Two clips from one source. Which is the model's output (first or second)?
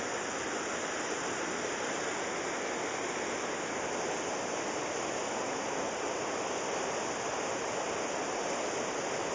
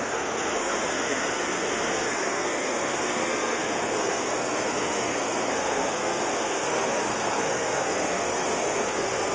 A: second